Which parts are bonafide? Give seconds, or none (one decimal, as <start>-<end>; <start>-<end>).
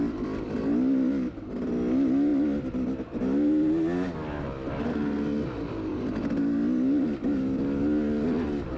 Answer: 0.0-8.8